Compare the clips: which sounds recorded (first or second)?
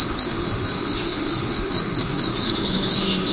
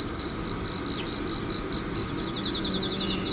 second